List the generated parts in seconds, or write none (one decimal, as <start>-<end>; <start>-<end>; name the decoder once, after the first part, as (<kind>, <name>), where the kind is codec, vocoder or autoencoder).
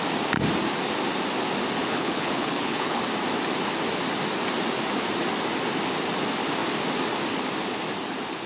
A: 1.8-3.0 (codec, HILCodec)